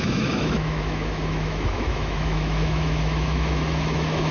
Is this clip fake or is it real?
fake